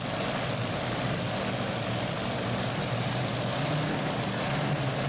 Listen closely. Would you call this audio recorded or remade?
recorded